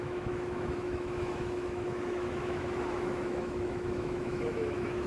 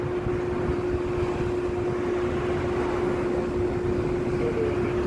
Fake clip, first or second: first